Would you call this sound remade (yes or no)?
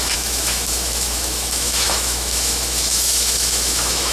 yes